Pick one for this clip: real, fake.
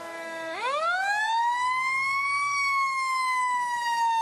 fake